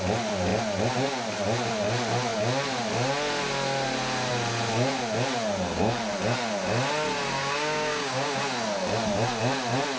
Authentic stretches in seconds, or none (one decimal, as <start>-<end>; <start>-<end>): 0.0-7.4; 8.4-10.0